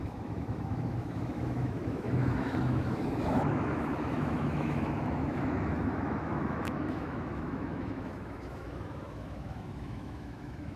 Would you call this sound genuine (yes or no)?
no